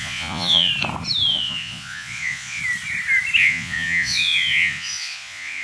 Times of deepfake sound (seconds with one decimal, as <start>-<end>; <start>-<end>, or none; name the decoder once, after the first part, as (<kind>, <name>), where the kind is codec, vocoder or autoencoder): 0.0-0.7 (vocoder, Vocos); 1.3-2.6; 3.4-5.6